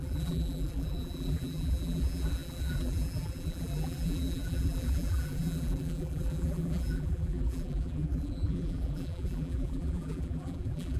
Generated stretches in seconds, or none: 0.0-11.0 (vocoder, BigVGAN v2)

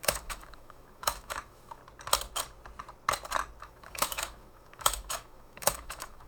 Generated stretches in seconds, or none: 0.0-1.8 (autoencoder, DAC-VAE); 3.6-6.3

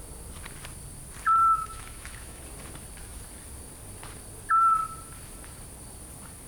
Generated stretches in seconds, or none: 1.4-2.4 (autoencoder, DAC-VAE)

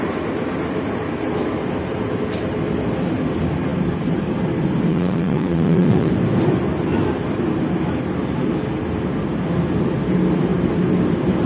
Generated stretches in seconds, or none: 4.9-6.1 (vocoder, Vocos)

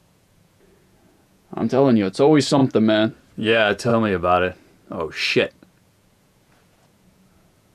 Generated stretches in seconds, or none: 0.0-2.6 (vocoder, Vocos); 3.3-3.9; 5.5-7.7

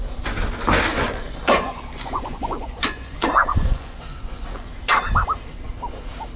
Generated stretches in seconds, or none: 0.9-4.7 (vocoder, Vocos)

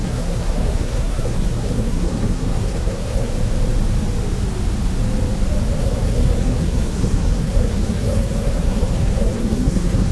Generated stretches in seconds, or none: 0.0-3.3 (codec, SNAC); 5.8-10.1

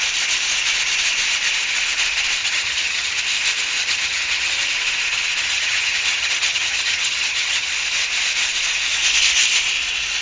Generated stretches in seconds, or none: 2.4-3.2 (vocoder, HiFi-GAN); 3.8-4.6; 5.4-7.7